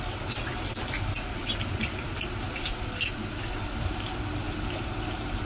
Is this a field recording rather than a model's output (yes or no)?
yes